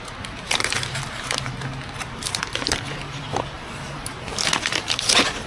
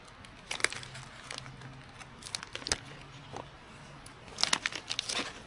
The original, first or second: second